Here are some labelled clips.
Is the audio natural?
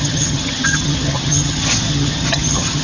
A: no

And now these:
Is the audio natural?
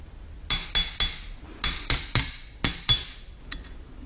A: yes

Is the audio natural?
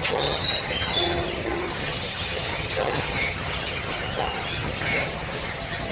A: no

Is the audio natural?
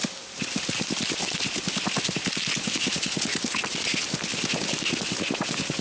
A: yes